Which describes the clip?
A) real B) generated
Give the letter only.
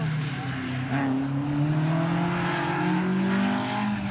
A